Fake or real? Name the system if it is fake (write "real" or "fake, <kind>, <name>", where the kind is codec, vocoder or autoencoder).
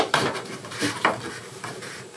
fake, vocoder, BigVGAN v2